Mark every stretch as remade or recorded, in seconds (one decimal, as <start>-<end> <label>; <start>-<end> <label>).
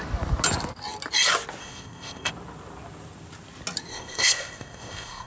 0.0-1.6 recorded; 1.6-2.3 remade; 2.3-3.9 recorded; 3.9-5.3 remade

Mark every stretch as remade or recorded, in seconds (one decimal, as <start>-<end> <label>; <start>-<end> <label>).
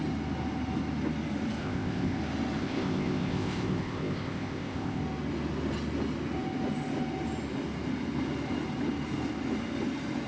0.0-1.6 recorded; 1.6-2.2 remade; 2.2-2.6 recorded; 2.6-5.0 remade; 5.0-10.3 recorded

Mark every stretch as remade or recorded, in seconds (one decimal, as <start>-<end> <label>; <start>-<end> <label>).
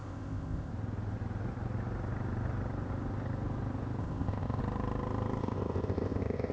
0.0-0.7 remade; 0.7-4.0 recorded; 4.0-4.6 remade; 4.6-5.4 recorded; 5.4-6.5 remade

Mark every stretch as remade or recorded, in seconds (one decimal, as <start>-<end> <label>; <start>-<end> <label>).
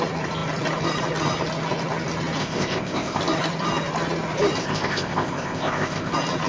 0.0-2.4 recorded; 2.4-3.2 remade; 3.2-4.6 recorded; 4.6-6.1 remade; 6.1-6.5 recorded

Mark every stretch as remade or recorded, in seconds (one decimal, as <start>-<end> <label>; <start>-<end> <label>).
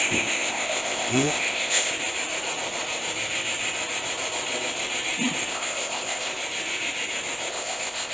0.0-1.9 remade; 1.9-5.5 recorded; 5.5-6.3 remade; 6.3-7.5 recorded; 7.5-8.1 remade